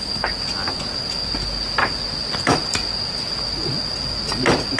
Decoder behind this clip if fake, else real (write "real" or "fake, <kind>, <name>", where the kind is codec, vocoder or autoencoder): real